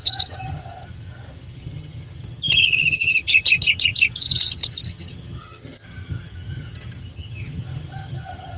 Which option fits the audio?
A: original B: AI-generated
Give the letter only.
B